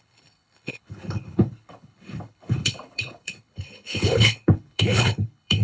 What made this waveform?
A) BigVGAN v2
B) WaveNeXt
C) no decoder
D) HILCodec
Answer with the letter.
D